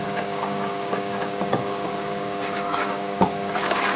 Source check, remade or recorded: remade